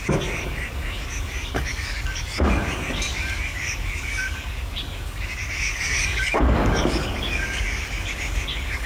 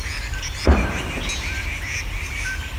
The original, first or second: second